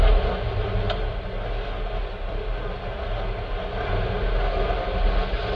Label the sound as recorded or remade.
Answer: recorded